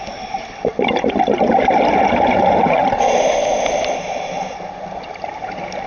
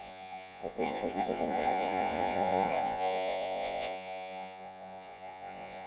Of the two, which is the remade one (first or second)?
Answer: second